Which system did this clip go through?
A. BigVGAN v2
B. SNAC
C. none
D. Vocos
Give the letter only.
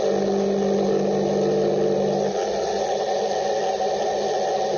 C